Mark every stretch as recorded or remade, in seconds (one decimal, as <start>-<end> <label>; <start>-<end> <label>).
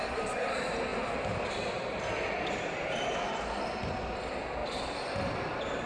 0.0-0.9 recorded; 0.9-3.2 remade; 3.2-4.6 recorded; 4.6-5.9 remade